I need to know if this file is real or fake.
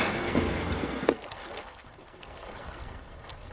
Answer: fake